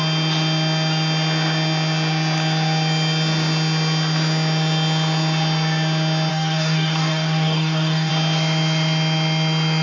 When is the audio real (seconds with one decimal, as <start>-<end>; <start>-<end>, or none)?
0.0-6.3; 8.1-9.8